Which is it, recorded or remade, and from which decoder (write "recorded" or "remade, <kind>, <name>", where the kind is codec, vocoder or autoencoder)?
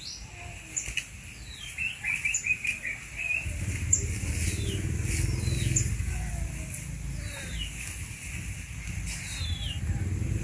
recorded